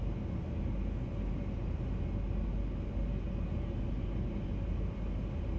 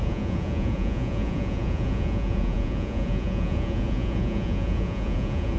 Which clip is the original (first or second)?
first